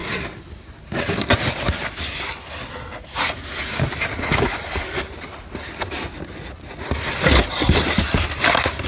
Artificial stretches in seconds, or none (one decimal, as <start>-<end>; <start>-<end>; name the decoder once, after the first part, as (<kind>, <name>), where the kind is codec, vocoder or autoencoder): none